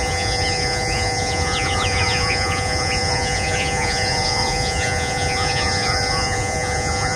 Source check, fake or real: fake